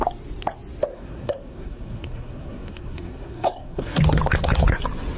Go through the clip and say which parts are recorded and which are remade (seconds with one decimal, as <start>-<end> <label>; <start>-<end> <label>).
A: 0.0-0.9 recorded; 0.9-4.0 remade; 4.0-5.2 recorded